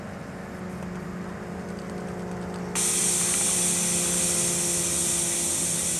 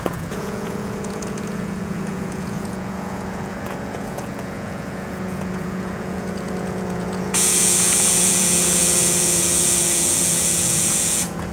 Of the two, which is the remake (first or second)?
second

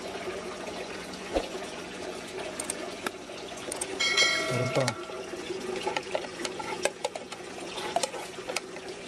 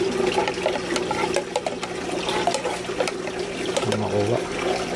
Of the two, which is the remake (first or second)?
first